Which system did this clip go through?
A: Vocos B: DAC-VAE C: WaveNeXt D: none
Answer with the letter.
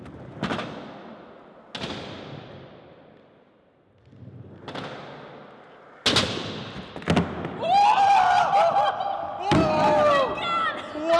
D